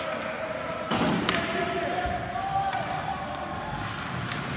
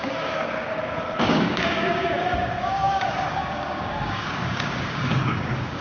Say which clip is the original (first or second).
first